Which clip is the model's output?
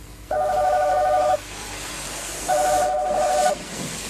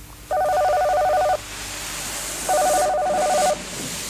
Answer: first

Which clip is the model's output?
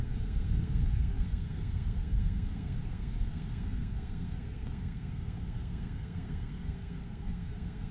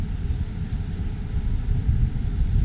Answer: first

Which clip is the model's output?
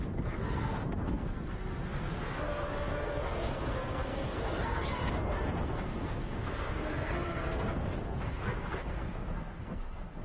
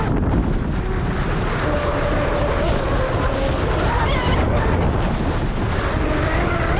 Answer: first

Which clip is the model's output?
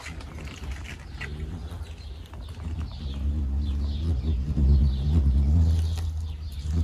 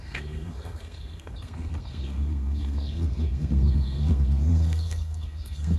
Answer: second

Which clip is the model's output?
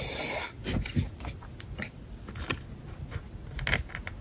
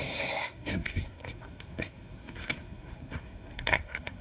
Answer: second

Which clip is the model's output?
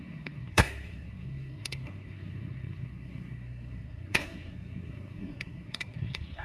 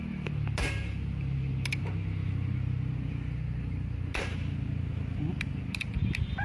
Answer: first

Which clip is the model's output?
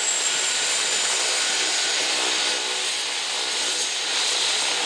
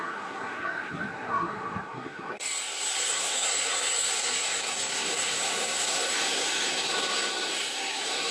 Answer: second